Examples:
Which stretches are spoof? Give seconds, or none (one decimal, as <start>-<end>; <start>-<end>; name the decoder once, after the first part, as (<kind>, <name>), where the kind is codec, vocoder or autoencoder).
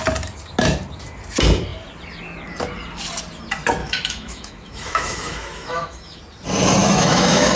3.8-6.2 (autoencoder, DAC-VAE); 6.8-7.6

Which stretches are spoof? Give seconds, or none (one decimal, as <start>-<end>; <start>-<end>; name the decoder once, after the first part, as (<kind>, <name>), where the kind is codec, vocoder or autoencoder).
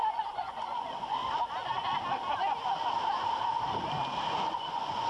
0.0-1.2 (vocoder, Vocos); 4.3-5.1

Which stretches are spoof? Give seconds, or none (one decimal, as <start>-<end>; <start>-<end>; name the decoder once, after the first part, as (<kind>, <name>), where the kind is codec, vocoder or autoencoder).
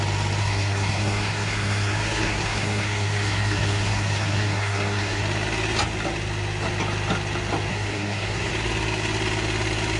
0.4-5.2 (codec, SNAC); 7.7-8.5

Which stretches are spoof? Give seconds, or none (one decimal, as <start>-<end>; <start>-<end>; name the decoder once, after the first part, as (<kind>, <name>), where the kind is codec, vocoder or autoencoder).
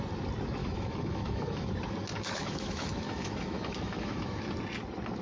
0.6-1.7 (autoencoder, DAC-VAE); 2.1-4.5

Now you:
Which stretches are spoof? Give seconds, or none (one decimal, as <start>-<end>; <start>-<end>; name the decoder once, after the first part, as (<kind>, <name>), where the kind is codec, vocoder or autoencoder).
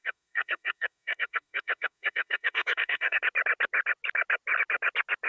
0.0-3.2 (codec, SNAC)